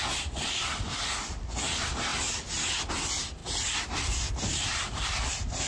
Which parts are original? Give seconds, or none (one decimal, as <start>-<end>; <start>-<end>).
0.0-5.7